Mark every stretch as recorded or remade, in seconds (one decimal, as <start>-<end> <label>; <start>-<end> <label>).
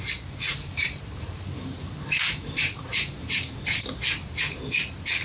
0.0-0.5 recorded; 0.5-3.5 remade; 3.5-5.2 recorded